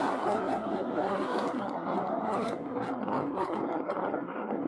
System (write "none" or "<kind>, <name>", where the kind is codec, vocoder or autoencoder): codec, SNAC